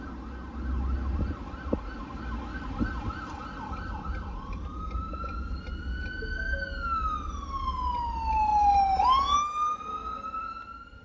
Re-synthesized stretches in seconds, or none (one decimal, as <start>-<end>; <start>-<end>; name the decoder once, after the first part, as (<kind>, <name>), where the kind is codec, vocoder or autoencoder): none